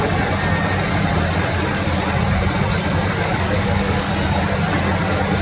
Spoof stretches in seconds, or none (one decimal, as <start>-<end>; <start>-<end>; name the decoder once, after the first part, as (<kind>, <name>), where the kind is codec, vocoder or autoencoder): 3.3-4.1 (codec, DAC)